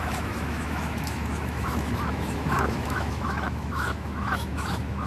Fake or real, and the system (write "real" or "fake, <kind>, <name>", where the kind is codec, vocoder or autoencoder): fake, autoencoder, DAC-VAE